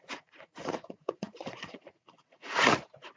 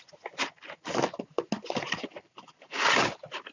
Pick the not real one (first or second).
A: first